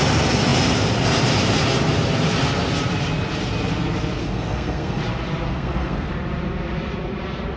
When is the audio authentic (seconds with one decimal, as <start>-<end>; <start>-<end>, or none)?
0.0-4.2; 5.0-5.5; 6.1-7.6